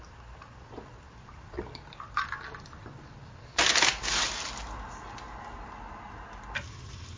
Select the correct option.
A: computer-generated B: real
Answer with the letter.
B